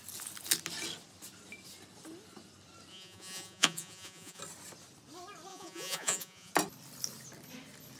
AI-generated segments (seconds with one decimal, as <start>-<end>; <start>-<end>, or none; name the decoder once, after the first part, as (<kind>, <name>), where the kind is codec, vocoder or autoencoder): 2.9-4.4 (vocoder, Vocos); 5.5-6.5